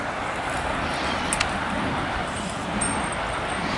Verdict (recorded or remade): recorded